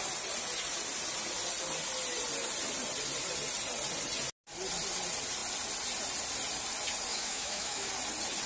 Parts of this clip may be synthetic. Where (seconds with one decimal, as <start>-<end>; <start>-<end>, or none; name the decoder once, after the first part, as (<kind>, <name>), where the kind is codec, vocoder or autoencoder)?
7.1-7.9 (autoencoder, DAC-VAE)